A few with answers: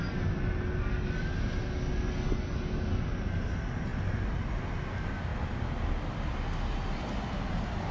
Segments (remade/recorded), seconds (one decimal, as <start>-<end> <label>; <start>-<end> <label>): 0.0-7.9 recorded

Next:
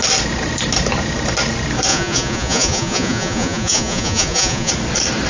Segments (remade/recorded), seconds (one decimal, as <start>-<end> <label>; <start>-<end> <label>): 0.0-1.9 recorded; 1.9-4.7 remade; 4.7-5.3 recorded

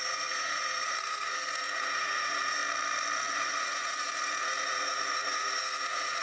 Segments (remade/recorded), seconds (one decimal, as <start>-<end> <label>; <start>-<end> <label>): 0.0-2.6 remade; 2.6-3.3 recorded; 3.3-6.2 remade

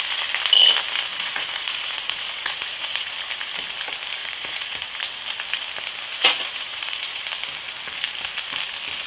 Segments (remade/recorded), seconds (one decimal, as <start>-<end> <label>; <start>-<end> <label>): 0.0-1.1 recorded; 1.1-3.1 remade; 3.1-4.2 recorded; 4.2-4.9 remade; 4.9-6.1 recorded; 6.1-7.2 remade; 7.2-9.1 recorded

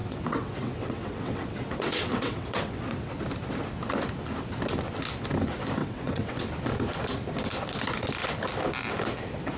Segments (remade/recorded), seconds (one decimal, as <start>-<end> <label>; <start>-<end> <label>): 0.0-3.1 remade; 3.1-5.8 recorded; 5.8-6.5 remade; 6.5-9.6 recorded

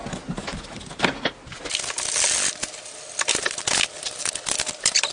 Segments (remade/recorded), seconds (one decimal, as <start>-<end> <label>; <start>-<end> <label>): 0.0-5.1 recorded

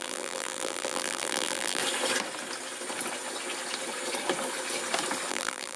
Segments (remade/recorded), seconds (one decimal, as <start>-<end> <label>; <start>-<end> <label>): 0.0-1.8 remade; 1.8-5.3 recorded; 5.3-5.8 remade